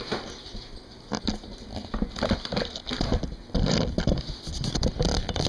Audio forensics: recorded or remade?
recorded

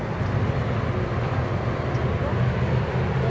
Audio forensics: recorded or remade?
recorded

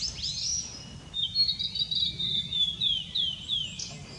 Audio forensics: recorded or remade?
recorded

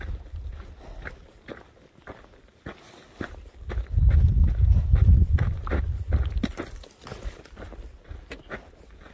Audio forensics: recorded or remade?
recorded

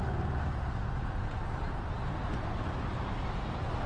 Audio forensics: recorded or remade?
recorded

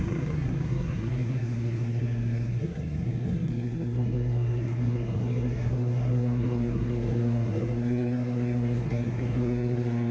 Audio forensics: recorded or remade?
remade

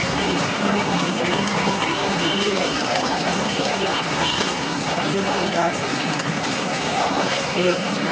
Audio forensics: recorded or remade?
remade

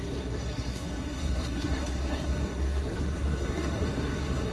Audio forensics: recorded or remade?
remade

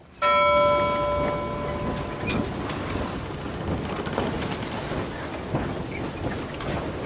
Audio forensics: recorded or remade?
recorded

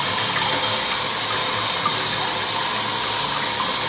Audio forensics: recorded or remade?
recorded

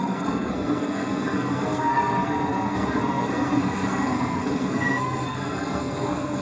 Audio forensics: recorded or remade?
remade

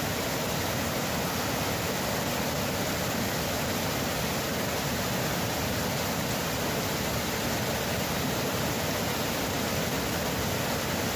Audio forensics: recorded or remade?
recorded